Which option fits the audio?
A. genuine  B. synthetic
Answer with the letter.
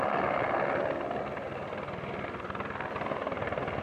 A